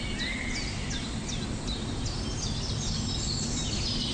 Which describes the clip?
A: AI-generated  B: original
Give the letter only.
B